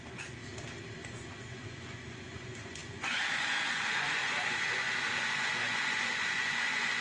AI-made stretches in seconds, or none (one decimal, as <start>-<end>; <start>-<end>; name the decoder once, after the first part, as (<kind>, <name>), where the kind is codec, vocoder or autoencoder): 0.0-0.4 (vocoder, Vocos); 0.9-7.0